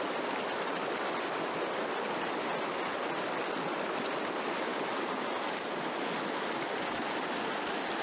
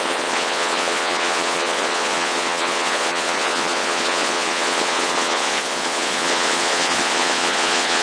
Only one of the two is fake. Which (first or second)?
second